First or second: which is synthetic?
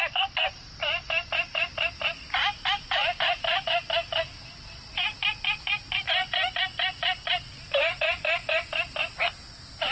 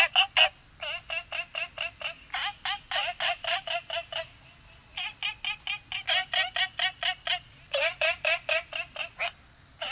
first